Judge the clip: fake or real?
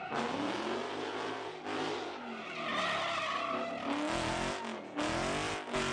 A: real